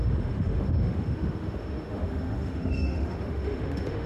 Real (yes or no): no